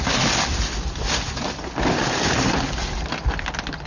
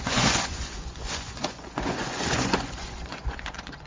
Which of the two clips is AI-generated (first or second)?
second